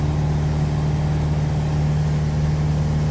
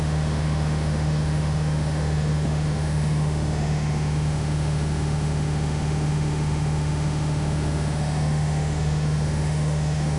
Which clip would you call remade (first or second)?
second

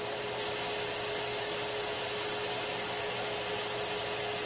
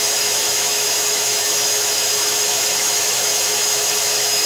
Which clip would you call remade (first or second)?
second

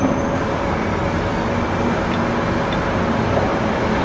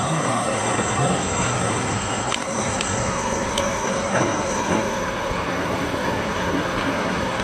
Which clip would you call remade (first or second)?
second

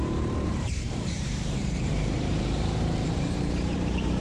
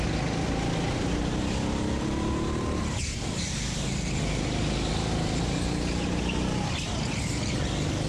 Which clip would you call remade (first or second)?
first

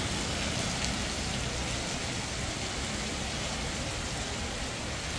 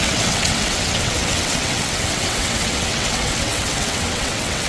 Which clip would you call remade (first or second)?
second